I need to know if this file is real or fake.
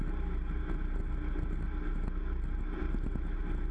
real